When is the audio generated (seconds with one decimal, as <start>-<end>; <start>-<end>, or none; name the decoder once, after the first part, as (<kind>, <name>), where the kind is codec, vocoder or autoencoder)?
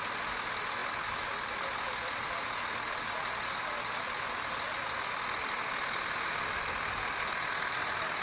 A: none